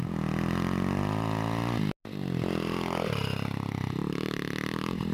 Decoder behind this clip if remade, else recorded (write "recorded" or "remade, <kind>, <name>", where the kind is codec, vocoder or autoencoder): recorded